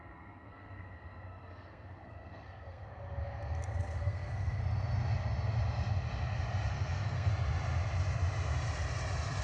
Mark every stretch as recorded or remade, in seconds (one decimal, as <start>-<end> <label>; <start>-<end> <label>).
0.0-4.6 remade; 4.6-6.7 recorded; 6.7-7.3 remade; 7.3-9.4 recorded